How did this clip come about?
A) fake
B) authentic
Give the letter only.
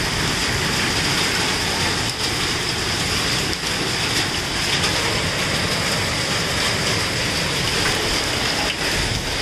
B